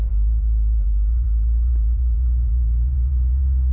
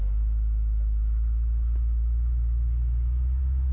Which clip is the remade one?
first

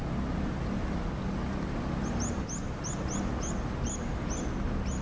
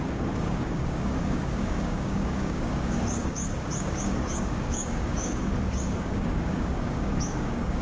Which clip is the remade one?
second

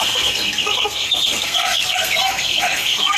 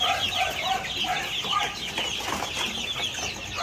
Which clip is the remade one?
first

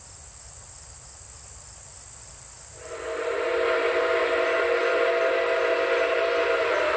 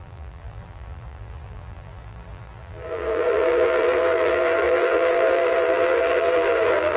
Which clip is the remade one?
second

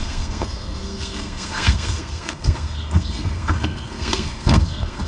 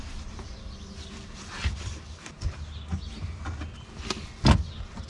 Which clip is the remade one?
first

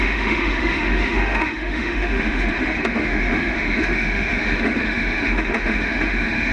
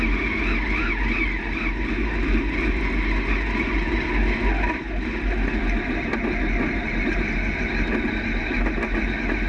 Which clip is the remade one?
first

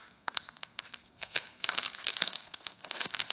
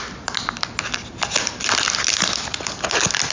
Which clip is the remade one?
first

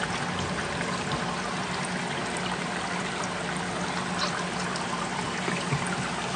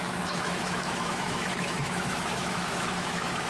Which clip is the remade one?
second